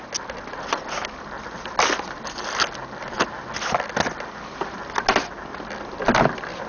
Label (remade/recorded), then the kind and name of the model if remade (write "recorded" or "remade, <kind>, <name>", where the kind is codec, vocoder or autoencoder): recorded